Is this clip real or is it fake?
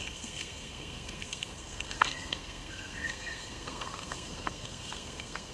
fake